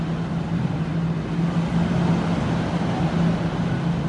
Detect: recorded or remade recorded